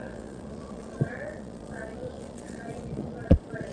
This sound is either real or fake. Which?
fake